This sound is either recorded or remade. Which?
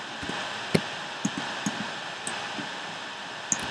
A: recorded